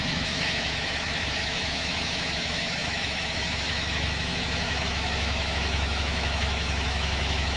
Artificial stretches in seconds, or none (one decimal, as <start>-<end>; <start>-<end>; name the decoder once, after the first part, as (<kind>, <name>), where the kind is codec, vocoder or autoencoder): 0.0-7.6 (autoencoder, DAC-VAE)